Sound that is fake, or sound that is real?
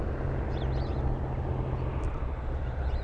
real